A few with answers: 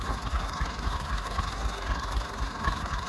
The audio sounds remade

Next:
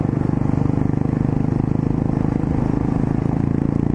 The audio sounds recorded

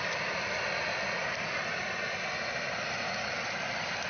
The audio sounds recorded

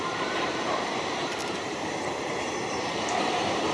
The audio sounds remade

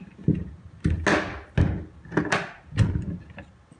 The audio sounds recorded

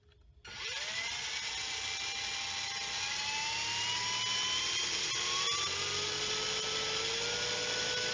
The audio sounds recorded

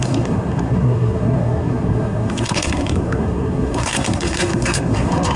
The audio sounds remade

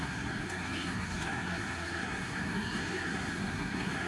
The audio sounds remade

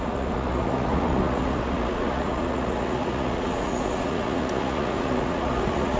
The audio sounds remade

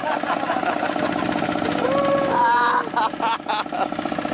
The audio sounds recorded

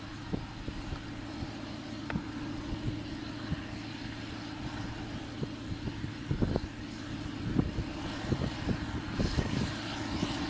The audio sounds recorded